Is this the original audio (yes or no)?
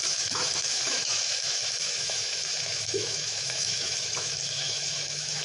no